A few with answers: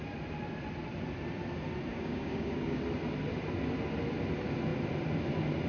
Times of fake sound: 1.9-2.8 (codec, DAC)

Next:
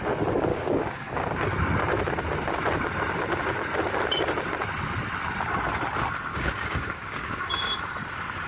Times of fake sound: 0.5-1.3 (codec, DAC); 6.3-7.7